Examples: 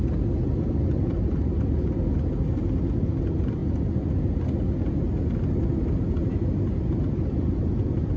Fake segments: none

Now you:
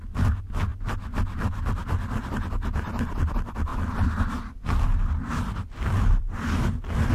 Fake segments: 3.7-7.1 (vocoder, BigVGAN v2)